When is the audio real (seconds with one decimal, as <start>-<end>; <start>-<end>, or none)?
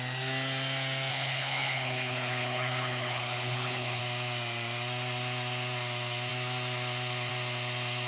0.0-1.1; 4.0-8.1